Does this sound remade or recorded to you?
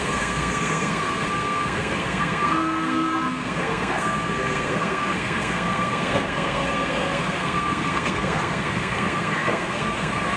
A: remade